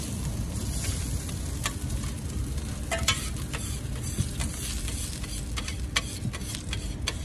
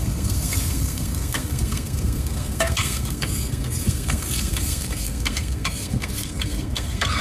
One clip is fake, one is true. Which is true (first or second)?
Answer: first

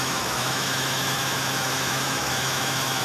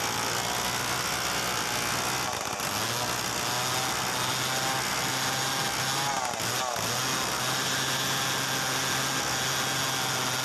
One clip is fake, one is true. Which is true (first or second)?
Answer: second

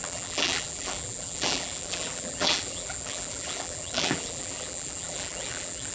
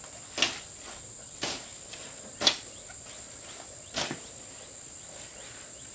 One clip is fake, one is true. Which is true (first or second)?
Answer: second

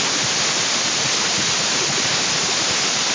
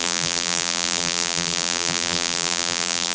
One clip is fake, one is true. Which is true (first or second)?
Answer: first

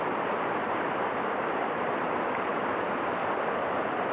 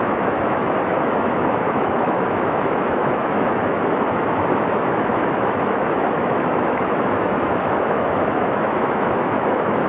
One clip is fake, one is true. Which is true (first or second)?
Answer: first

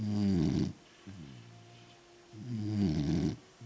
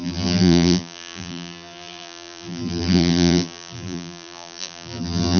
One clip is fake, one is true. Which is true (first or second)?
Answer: first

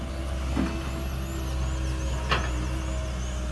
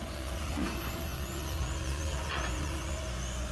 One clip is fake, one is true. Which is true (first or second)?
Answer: first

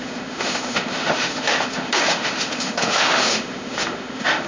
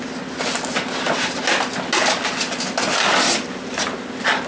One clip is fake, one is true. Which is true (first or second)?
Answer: second